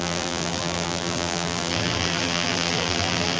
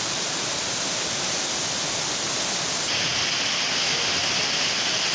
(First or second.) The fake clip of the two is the first